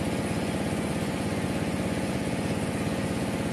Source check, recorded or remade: remade